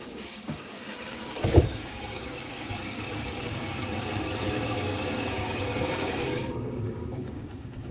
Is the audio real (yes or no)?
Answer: no